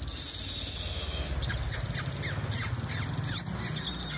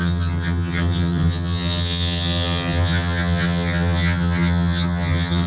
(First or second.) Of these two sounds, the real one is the first